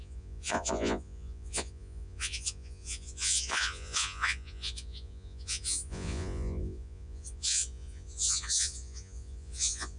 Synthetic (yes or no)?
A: yes